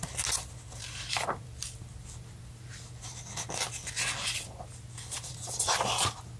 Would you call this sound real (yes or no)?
yes